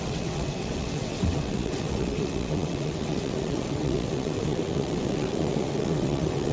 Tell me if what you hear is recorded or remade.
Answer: remade